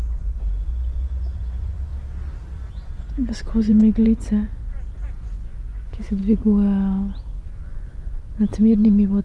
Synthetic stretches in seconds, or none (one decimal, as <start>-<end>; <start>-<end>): 0.0-1.9; 2.7-6.2; 7.4-9.2